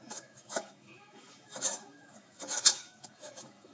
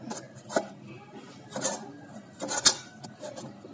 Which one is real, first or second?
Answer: second